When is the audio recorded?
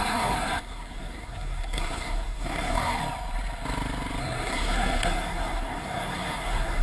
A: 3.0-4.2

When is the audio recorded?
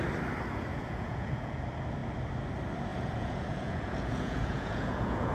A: 0.0-0.7; 1.6-2.9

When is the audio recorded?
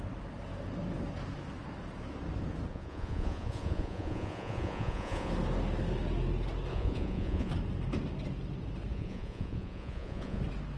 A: 0.0-2.7; 5.3-6.7; 7.5-8.9; 10.4-10.8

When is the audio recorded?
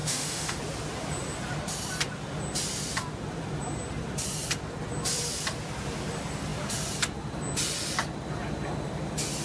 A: 0.6-9.4